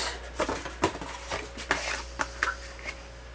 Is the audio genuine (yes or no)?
yes